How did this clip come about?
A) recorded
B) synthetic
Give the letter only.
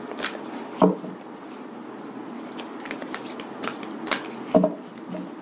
A